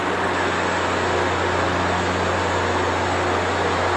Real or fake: real